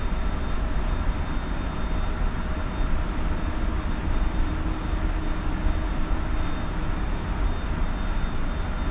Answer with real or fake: real